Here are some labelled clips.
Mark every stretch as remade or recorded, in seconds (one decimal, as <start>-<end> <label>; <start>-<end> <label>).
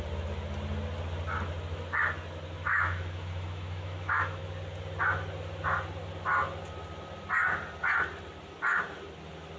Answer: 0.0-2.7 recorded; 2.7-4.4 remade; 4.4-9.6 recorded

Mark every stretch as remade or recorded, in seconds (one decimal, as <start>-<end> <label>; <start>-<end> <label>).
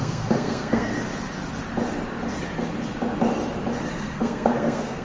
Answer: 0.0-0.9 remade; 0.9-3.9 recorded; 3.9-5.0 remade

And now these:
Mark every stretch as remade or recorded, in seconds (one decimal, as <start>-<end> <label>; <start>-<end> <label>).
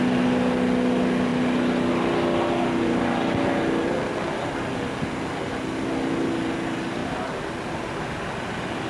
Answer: 0.0-7.0 recorded; 7.0-8.0 remade; 8.0-8.9 recorded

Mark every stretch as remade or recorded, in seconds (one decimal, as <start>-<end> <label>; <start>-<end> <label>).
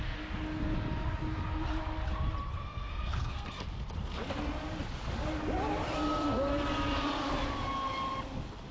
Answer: 0.0-2.6 recorded; 2.6-3.5 remade; 3.5-8.7 recorded